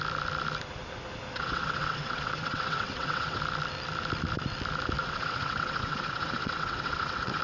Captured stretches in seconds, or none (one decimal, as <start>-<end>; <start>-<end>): 0.0-1.3; 3.4-5.0

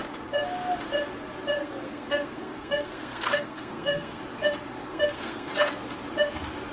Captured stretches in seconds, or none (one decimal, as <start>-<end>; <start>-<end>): 0.0-1.6; 4.2-4.8; 5.5-6.7